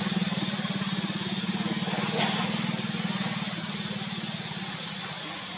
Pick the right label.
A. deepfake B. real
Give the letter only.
B